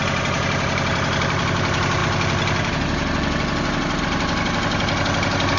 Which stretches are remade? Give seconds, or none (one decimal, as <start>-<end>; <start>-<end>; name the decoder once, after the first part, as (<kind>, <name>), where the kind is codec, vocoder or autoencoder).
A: none